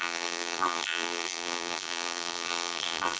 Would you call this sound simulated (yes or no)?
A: yes